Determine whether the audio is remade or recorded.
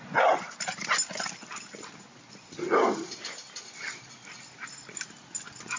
recorded